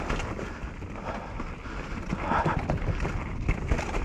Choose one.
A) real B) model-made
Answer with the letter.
A